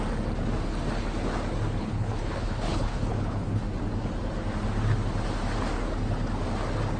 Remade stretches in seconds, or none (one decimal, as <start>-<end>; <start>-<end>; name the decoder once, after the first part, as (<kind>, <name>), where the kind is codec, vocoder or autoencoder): 1.8-3.6 (codec, HILCodec)